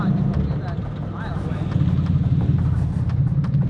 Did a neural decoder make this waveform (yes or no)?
no